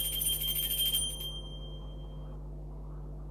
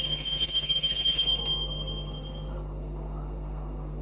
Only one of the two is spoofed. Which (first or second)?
second